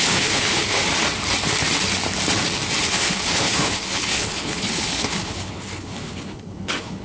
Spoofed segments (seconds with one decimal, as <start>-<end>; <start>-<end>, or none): 0.0-0.8; 2.9-7.0